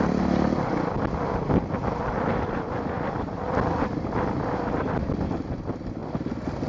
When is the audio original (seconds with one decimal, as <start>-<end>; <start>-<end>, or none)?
0.0-6.7